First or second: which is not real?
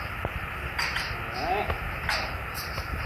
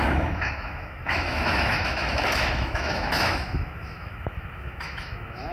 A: second